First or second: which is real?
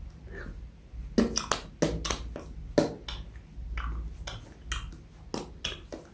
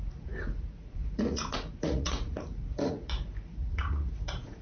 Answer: first